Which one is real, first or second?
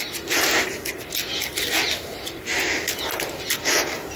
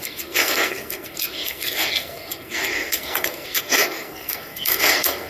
first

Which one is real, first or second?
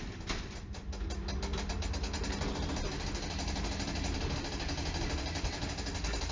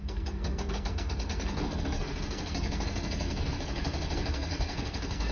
first